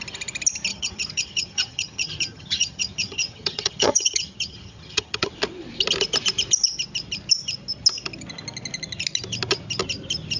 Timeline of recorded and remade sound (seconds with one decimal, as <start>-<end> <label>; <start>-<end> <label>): 0.0-0.7 recorded; 0.7-5.3 remade; 5.3-10.4 recorded